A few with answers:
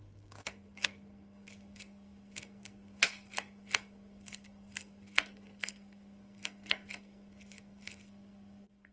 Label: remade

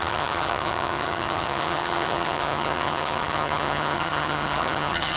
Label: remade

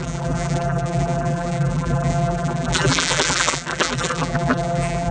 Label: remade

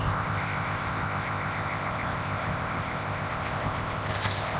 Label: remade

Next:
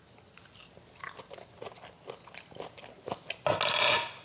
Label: recorded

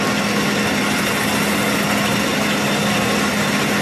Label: recorded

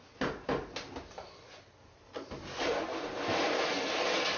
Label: recorded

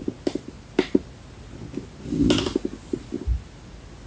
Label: recorded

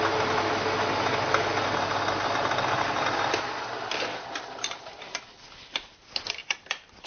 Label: recorded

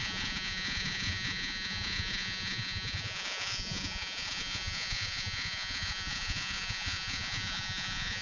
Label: remade